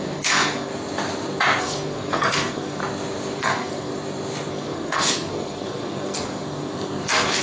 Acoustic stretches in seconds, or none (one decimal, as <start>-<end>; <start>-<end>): 0.7-1.6; 2.8-3.4; 3.9-4.5